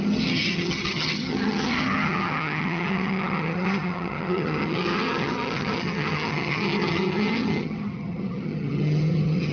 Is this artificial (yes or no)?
yes